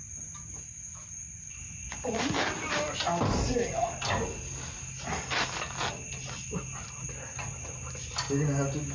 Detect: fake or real real